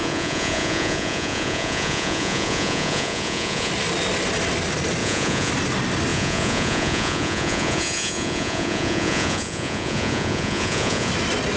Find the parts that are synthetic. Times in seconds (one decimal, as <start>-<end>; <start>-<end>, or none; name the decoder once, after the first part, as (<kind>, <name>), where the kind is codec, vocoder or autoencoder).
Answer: 0.0-3.7 (vocoder, Vocos); 5.0-5.5; 6.1-11.1